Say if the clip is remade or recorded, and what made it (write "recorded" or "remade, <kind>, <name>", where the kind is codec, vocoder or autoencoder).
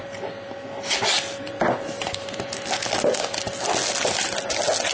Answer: recorded